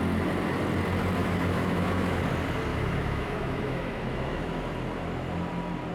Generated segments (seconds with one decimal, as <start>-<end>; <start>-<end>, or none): 1.2-2.2; 2.7-4.6